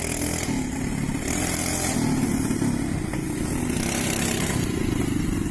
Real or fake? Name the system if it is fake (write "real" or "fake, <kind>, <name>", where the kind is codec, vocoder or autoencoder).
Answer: real